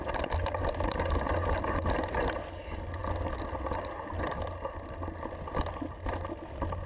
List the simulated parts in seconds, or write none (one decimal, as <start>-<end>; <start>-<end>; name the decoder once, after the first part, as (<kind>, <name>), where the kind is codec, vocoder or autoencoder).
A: none